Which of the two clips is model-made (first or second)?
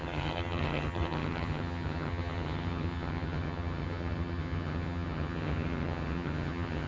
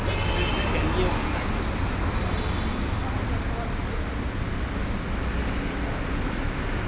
first